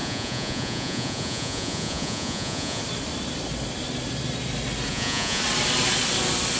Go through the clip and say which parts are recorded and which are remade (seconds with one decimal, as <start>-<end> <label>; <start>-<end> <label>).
0.0-2.8 remade; 2.8-4.9 recorded; 4.9-5.4 remade; 5.4-6.6 recorded